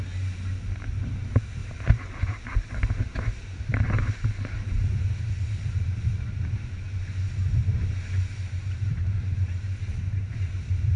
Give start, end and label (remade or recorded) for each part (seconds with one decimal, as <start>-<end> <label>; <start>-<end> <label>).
0.0-1.6 recorded; 1.6-2.7 remade; 2.7-3.7 recorded; 3.7-4.9 remade; 4.9-8.6 recorded; 8.6-10.3 remade; 10.3-11.0 recorded